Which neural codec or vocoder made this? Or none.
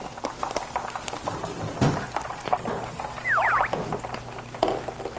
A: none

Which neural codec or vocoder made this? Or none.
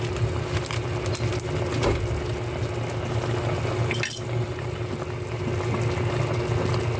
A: none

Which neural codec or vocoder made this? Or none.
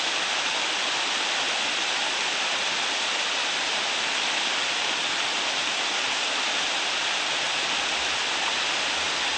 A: none